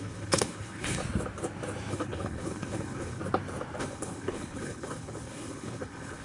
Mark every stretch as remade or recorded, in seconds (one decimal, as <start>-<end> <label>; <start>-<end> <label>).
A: 0.0-1.0 remade; 1.0-1.9 recorded; 1.9-3.2 remade; 3.2-3.8 recorded; 3.8-6.2 remade